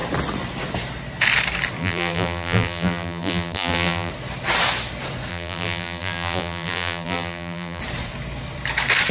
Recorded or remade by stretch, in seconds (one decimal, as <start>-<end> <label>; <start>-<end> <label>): 0.0-1.8 recorded; 1.8-4.1 remade; 4.1-5.3 recorded; 5.3-7.8 remade; 7.8-9.1 recorded